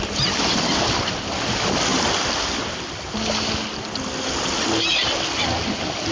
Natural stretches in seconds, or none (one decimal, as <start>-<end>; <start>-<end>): 0.0-6.1